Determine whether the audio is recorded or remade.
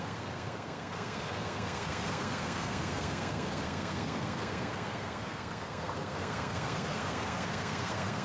remade